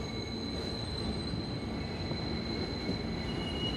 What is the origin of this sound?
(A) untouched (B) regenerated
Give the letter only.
A